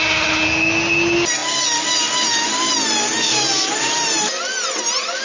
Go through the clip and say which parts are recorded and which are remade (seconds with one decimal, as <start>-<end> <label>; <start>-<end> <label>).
0.0-5.2 recorded